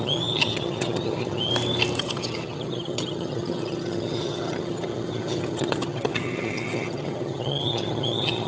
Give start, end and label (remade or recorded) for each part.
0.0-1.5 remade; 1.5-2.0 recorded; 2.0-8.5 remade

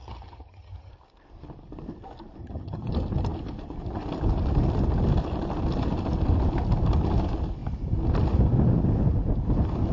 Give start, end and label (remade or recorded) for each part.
0.0-0.9 remade; 0.9-2.4 recorded; 2.4-2.9 remade; 2.9-9.9 recorded

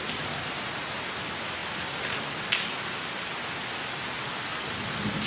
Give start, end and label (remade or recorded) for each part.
0.0-5.3 recorded

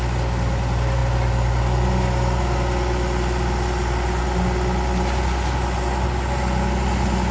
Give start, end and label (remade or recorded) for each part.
0.0-7.3 recorded

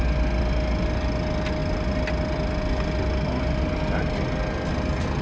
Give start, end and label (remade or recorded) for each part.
0.0-5.2 recorded

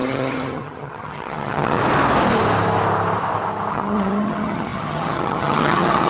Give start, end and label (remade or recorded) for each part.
0.0-1.8 remade; 1.8-3.7 recorded; 3.7-6.1 remade

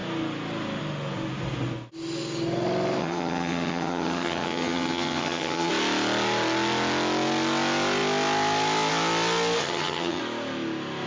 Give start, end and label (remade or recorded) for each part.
0.0-3.0 recorded; 3.0-5.7 remade; 5.7-9.6 recorded; 9.6-10.2 remade; 10.2-11.1 recorded